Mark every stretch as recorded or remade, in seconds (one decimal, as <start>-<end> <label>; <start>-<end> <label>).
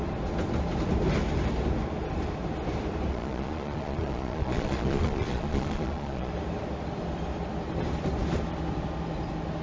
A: 0.0-3.1 recorded; 3.1-6.3 remade; 6.3-9.6 recorded